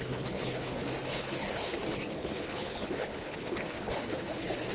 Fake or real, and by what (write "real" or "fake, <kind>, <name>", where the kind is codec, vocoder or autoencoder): fake, codec, HILCodec